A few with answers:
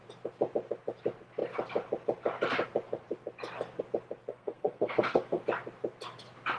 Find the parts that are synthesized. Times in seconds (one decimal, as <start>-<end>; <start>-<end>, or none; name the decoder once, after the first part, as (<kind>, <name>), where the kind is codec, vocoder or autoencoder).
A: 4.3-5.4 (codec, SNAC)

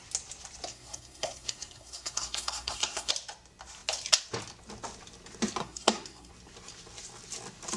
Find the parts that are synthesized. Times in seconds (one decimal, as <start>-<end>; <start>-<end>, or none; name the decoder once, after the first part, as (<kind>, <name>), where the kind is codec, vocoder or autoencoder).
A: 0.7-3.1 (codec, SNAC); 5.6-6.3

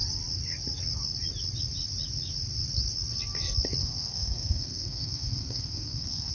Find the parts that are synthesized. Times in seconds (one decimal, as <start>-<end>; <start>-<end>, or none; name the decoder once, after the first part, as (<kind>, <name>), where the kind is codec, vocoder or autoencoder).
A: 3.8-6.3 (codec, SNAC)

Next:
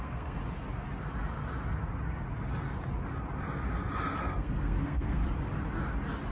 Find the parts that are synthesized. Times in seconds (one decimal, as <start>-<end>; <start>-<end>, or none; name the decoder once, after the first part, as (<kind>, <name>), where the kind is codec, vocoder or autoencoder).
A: 0.0-0.4 (codec, SNAC); 4.2-5.2

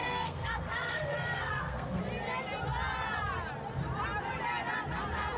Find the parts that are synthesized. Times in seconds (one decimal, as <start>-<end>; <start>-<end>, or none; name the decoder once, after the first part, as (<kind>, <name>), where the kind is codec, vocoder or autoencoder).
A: 0.0-2.0 (codec, SNAC)

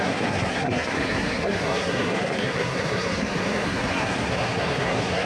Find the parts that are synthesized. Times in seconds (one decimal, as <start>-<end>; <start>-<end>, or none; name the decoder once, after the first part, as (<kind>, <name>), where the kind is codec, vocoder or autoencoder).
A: 0.0-5.3 (codec, SNAC)